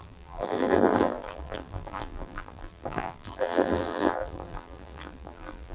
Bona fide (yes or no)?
no